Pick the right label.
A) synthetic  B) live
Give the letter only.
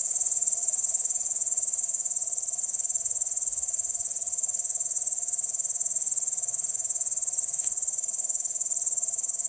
A